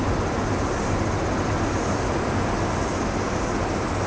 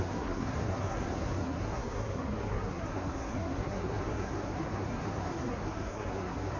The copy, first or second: second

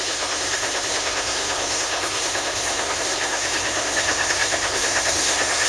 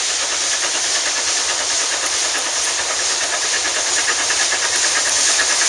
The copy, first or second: first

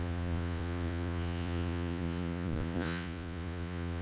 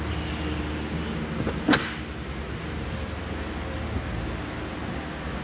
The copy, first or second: first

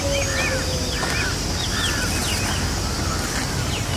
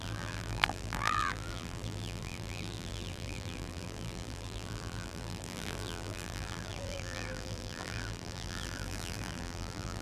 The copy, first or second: second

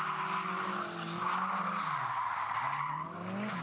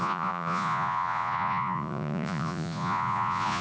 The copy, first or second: second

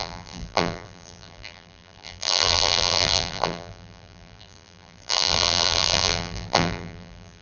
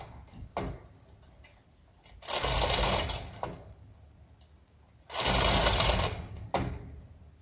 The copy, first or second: first